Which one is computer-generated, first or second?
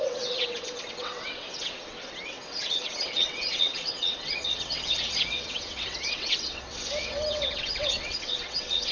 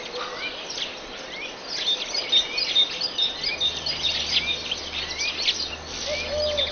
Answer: first